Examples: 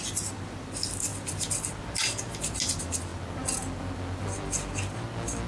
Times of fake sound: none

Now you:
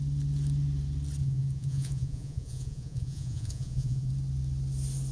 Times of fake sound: 1.2-4.1 (vocoder, Vocos)

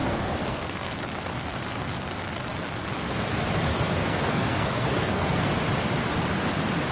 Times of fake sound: 0.0-0.9 (codec, SNAC); 3.7-5.5

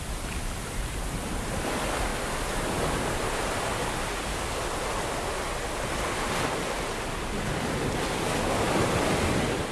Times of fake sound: none

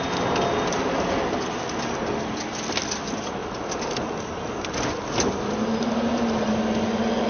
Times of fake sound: none

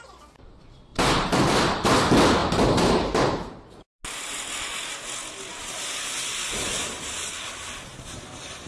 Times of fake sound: 0.9-1.9 (vocoder, BigVGAN v2); 2.4-4.0; 5.5-7.3; 7.9-8.7

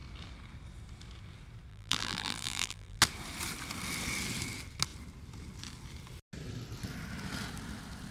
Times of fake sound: 1.7-3.0 (vocoder, BigVGAN v2)